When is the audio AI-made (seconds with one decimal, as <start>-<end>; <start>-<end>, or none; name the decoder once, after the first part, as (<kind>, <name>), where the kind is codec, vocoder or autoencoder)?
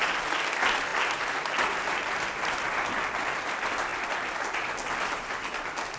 none